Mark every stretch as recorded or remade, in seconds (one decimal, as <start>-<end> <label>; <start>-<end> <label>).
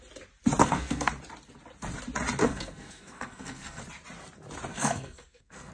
0.0-0.6 recorded; 0.6-1.1 remade; 1.1-2.4 recorded; 2.4-3.8 remade; 3.8-4.7 recorded; 4.7-5.7 remade